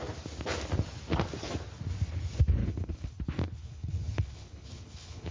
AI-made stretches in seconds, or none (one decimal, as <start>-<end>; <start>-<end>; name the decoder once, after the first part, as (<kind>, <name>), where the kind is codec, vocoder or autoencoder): 2.6-3.2 (codec, HILCodec); 3.6-5.3